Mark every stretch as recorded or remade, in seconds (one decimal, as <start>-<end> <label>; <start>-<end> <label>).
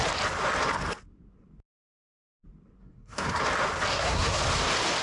0.0-2.8 recorded; 2.8-3.4 remade; 3.4-3.9 recorded; 3.9-4.4 remade; 4.4-5.0 recorded